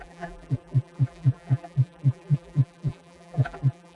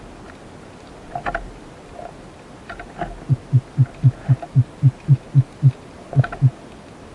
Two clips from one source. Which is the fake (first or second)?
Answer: first